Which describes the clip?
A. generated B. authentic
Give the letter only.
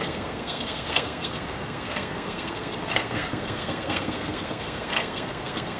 A